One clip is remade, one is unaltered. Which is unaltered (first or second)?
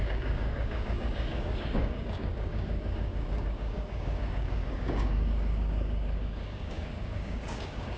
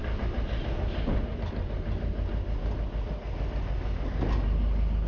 second